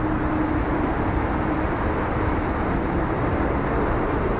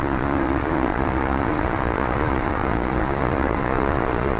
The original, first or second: first